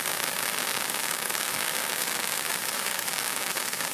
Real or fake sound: fake